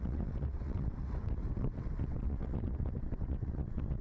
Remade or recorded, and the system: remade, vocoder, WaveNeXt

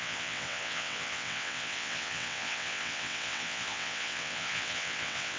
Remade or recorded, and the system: remade, vocoder, WaveNeXt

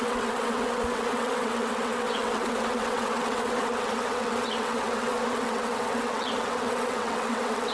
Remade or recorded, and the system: remade, vocoder, WaveNeXt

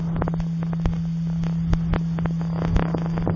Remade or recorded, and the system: recorded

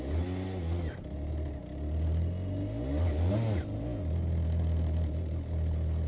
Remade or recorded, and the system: recorded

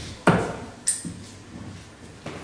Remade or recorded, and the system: recorded